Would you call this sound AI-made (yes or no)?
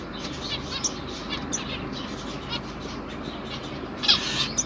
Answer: no